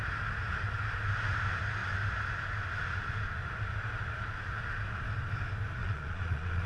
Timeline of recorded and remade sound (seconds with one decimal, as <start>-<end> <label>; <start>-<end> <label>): 0.0-5.8 recorded; 5.8-6.7 remade